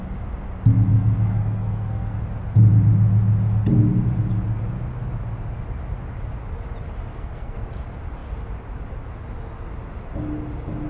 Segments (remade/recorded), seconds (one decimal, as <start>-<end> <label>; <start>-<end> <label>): 0.0-0.9 recorded; 0.9-2.2 remade; 2.2-7.1 recorded; 7.1-7.7 remade; 7.7-10.9 recorded